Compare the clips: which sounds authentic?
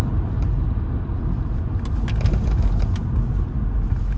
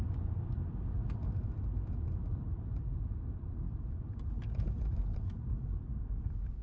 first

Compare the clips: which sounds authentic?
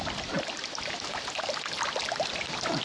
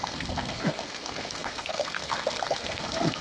first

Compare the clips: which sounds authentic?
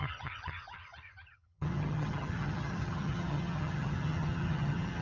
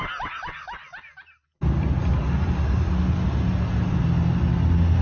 second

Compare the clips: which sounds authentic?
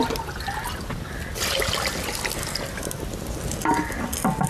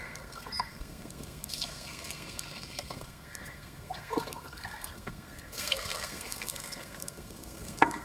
first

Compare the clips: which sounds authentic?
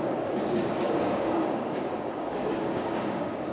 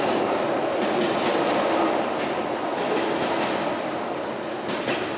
second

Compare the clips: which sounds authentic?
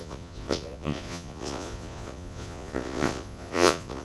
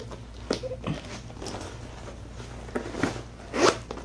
second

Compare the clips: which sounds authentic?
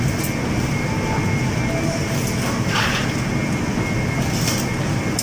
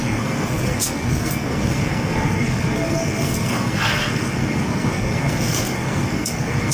first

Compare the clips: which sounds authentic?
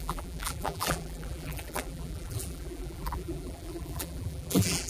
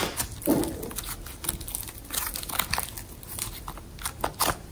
second